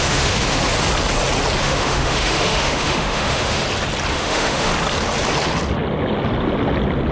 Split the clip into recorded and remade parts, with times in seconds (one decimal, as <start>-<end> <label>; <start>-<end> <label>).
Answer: 0.0-0.6 remade; 0.6-1.6 recorded; 1.6-3.6 remade; 3.6-4.1 recorded; 4.1-4.7 remade; 4.7-7.1 recorded